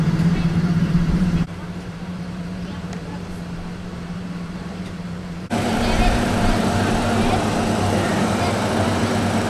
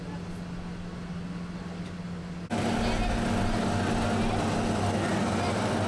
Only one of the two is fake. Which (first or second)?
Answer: first